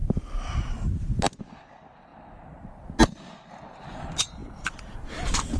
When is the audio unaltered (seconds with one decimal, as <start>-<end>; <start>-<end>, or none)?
0.0-5.6

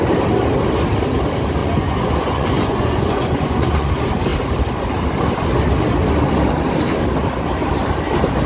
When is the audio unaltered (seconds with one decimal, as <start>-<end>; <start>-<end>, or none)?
0.0-1.6; 3.9-8.5

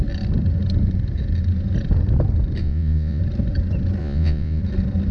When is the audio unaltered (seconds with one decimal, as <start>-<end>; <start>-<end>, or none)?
0.0-2.6; 3.2-4.0; 4.6-5.1

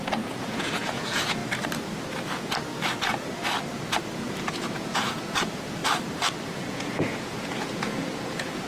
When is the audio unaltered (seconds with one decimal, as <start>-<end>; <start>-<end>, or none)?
1.4-4.5; 5.8-6.4

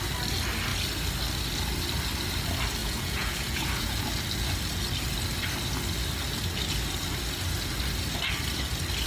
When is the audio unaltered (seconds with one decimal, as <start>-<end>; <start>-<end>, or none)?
0.0-2.8; 4.0-9.1

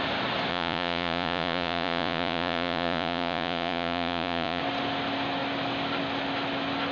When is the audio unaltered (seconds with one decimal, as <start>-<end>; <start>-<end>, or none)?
0.0-0.5; 4.6-6.9

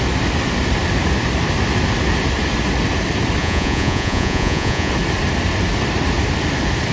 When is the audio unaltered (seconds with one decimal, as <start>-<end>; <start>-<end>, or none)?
0.0-3.4; 4.9-6.9

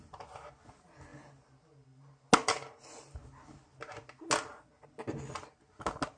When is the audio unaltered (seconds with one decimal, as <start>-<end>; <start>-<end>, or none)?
0.0-6.2